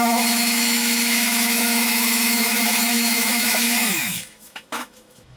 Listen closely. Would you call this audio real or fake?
fake